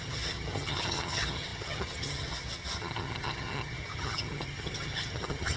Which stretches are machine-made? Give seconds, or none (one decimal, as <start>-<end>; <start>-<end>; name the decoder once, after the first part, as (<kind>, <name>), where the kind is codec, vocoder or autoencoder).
0.0-5.6 (vocoder, HiFi-GAN)